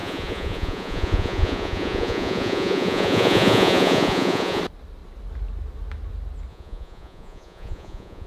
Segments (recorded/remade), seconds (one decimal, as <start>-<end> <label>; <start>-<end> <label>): 0.0-4.6 remade; 4.6-6.5 recorded; 6.5-8.3 remade